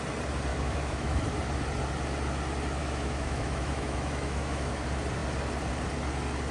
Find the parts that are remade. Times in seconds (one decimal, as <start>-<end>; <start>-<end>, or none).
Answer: 0.5-1.2; 2.8-4.8